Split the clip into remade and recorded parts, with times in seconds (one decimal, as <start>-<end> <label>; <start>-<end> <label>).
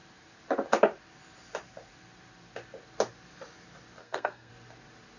0.0-4.0 recorded; 4.0-4.5 remade; 4.5-5.2 recorded